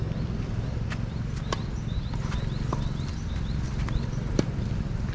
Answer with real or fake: real